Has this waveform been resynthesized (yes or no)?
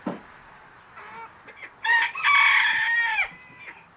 no